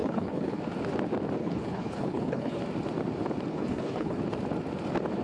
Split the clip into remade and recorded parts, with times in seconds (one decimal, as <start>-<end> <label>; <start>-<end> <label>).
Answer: 0.0-0.6 remade; 0.6-1.4 recorded; 1.4-2.6 remade; 2.6-3.5 recorded; 3.5-4.2 remade; 4.2-5.2 recorded